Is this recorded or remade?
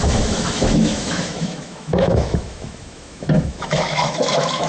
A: remade